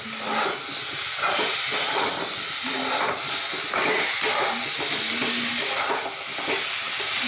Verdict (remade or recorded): recorded